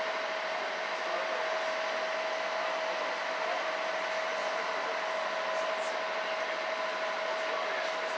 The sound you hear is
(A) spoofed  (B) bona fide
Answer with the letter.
A